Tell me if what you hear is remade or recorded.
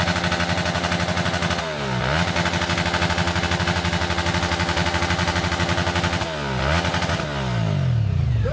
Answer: recorded